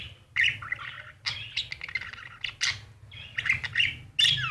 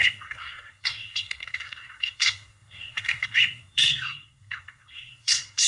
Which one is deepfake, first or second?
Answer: second